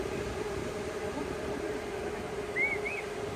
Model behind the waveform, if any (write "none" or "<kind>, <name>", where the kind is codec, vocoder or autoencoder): none